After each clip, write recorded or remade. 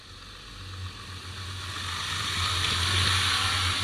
recorded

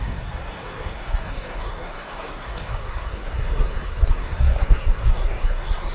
remade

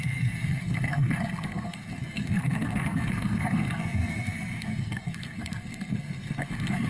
remade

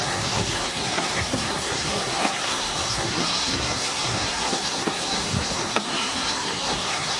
remade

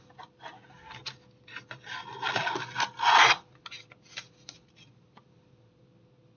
recorded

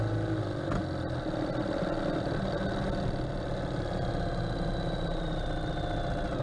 recorded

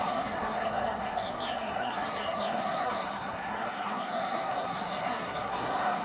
remade